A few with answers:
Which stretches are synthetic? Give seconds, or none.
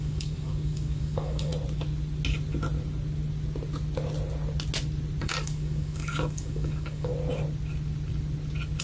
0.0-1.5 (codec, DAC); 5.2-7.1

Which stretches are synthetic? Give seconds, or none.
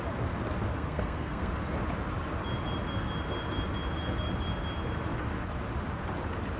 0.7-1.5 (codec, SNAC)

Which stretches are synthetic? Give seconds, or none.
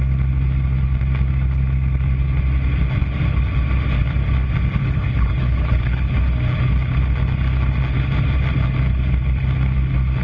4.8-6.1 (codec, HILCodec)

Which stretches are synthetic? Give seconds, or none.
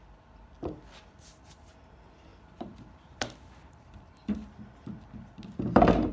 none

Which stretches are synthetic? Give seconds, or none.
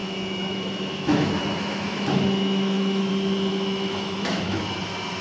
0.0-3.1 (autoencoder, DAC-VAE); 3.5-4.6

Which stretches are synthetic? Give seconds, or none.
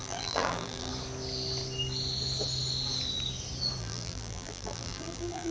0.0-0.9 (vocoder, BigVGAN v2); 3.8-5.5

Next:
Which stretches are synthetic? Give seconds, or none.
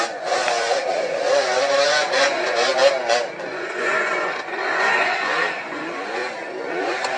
0.0-2.7 (vocoder, Vocos); 3.4-6.2; 6.7-7.2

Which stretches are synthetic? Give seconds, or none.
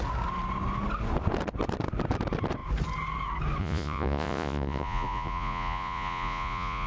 3.6-6.9 (vocoder, Vocos)